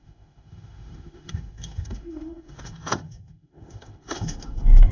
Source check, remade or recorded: remade